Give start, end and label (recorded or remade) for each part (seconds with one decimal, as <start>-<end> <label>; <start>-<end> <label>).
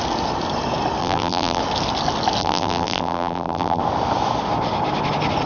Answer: 0.0-1.0 recorded; 1.0-1.6 remade; 1.6-2.4 recorded; 2.4-3.8 remade; 3.8-5.5 recorded